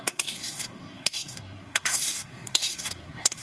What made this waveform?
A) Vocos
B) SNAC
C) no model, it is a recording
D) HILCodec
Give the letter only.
B